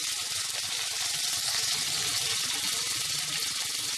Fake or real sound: real